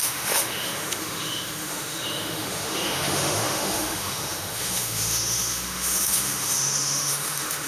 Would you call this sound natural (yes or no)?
no